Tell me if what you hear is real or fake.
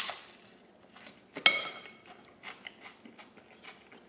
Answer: real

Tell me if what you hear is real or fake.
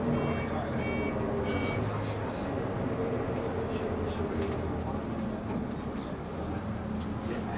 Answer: real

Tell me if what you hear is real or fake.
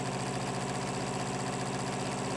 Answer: fake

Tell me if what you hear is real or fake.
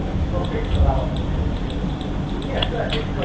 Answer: real